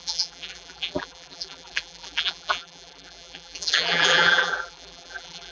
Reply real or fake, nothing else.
fake